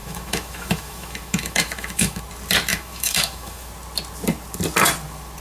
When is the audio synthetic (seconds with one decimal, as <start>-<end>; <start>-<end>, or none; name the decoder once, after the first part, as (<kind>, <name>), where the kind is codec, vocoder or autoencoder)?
0.0-2.2 (autoencoder, DAC-VAE); 2.7-3.7